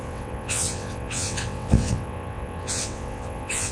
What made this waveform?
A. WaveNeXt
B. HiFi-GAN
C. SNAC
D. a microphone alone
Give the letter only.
A